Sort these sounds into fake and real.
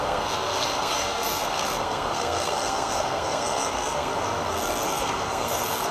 fake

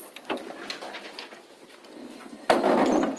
real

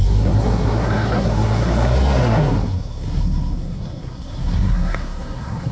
fake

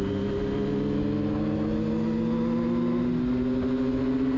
real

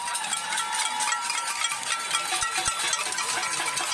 real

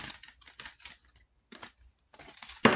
real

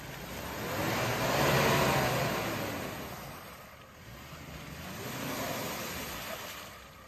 real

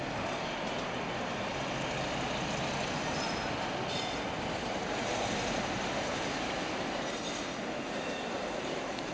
real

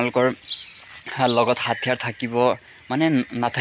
real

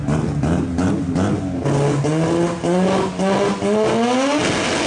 real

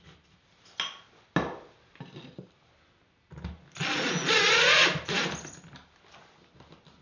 real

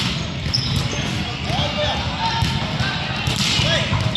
real